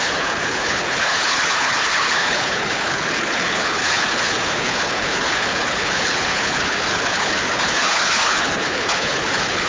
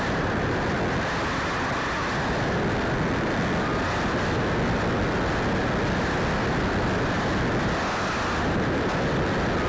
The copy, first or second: first